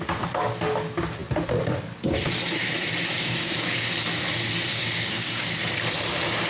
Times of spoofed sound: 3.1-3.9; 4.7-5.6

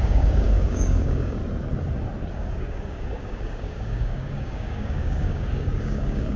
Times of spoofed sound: 0.0-1.4; 2.3-6.4